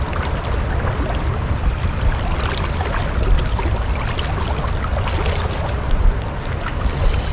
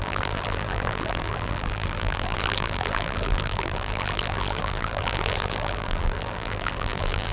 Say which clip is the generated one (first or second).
second